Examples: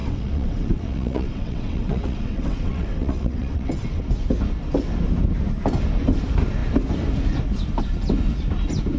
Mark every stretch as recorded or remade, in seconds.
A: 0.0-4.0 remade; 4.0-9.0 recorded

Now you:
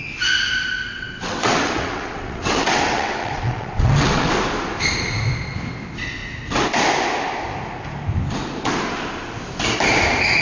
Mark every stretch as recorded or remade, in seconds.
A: 0.0-0.9 recorded; 0.9-4.3 remade; 4.3-10.4 recorded

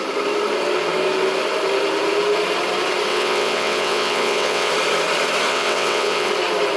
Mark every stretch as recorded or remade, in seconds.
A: 0.0-3.1 recorded; 3.1-4.7 remade; 4.7-5.5 recorded; 5.5-6.3 remade; 6.3-6.8 recorded

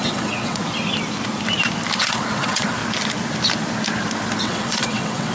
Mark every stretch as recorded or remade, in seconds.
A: 0.0-0.6 remade; 0.6-2.0 recorded; 2.0-2.8 remade; 2.8-4.4 recorded; 4.4-5.3 remade

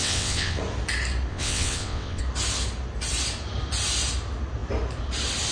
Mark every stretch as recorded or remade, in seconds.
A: 0.0-0.6 remade; 0.6-1.3 recorded; 1.3-2.2 remade; 2.2-5.5 recorded

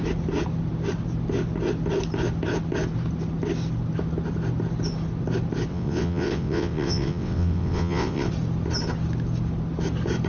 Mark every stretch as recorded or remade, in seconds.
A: 0.0-5.7 recorded; 5.7-8.3 remade; 8.3-10.3 recorded